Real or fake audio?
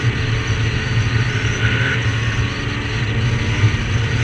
real